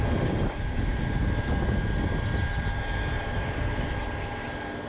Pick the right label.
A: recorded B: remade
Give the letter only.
A